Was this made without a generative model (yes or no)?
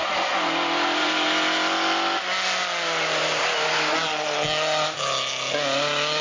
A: yes